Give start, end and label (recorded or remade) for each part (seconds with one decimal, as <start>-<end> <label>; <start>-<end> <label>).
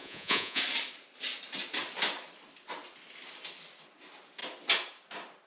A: 0.0-0.6 remade; 0.6-5.5 recorded